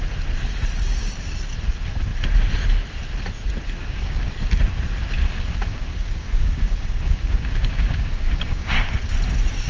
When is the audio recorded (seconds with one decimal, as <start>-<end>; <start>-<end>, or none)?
0.0-3.8; 4.3-5.2; 8.9-9.7